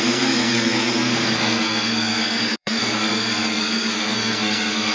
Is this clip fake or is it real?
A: fake